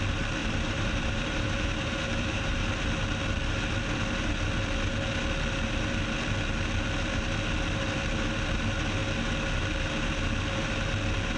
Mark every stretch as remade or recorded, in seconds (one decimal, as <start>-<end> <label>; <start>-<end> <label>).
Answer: 0.0-0.4 recorded; 0.4-2.7 remade; 2.7-11.4 recorded